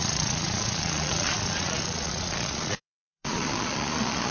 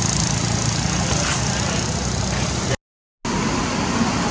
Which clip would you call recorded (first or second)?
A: second